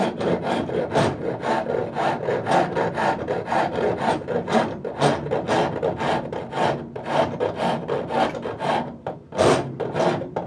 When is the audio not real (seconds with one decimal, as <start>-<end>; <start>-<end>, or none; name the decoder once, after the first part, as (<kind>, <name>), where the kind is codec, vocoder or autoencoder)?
none